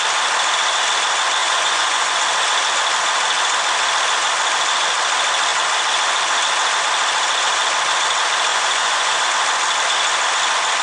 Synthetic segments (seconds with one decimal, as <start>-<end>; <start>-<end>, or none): 1.4-2.2; 8.5-9.3

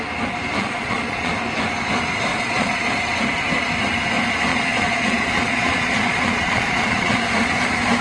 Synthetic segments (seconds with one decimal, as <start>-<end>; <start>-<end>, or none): 0.6-1.3; 2.3-2.8; 4.5-7.2

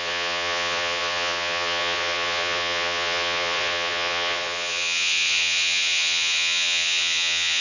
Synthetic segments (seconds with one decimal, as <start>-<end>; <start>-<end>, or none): 0.0-7.6

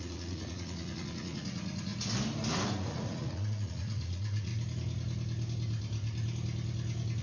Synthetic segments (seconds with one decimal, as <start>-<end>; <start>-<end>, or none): 0.0-1.9; 2.9-4.5

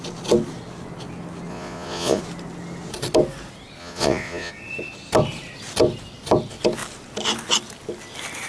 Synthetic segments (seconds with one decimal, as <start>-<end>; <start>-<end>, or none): 1.5-2.2; 3.8-4.5

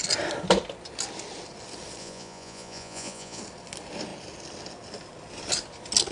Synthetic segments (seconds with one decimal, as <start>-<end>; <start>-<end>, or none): 2.0-3.4

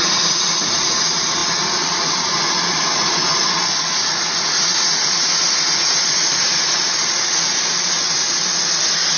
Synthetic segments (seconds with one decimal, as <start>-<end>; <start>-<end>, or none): 0.0-9.2